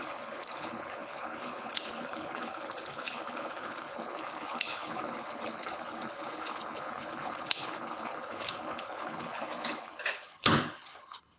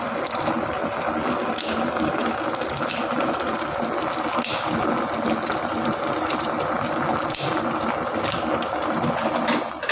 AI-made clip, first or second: first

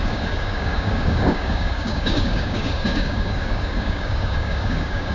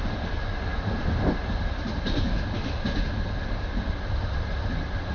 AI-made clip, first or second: first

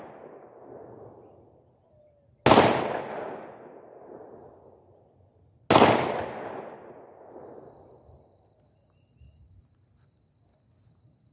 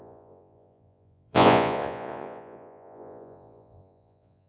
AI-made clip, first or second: second